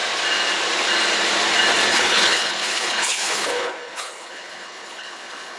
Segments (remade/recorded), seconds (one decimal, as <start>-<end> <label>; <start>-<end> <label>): 0.0-1.9 recorded; 1.9-5.6 remade